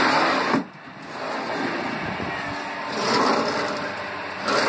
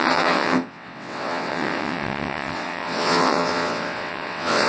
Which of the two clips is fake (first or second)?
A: second